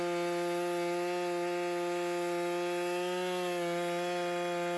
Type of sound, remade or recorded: recorded